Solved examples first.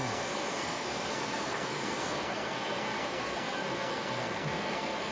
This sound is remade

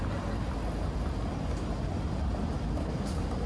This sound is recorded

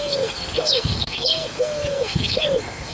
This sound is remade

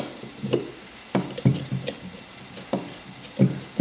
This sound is recorded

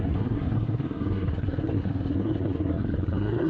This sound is remade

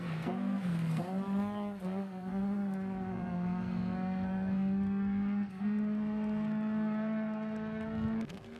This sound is remade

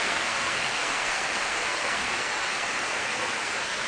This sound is remade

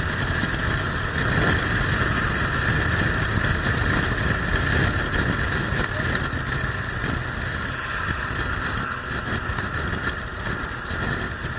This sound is recorded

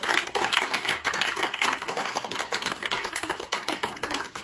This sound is remade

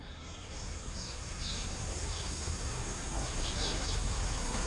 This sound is remade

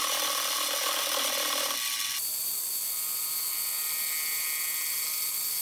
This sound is recorded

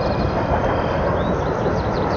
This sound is recorded